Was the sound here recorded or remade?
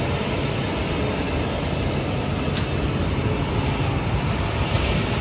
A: recorded